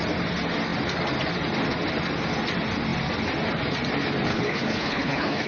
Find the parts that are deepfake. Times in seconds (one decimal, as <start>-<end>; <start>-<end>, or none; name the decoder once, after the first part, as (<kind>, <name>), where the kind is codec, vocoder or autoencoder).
4.3-5.5 (codec, HILCodec)